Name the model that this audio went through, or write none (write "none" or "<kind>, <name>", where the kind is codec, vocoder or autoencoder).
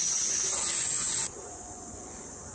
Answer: vocoder, Vocos